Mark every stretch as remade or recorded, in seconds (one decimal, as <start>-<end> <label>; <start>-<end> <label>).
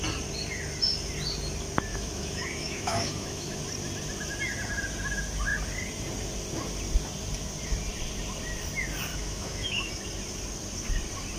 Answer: 0.0-1.9 recorded; 1.9-3.6 remade; 3.6-9.1 recorded; 9.1-9.9 remade; 9.9-11.4 recorded